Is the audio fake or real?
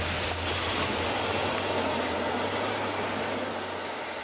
real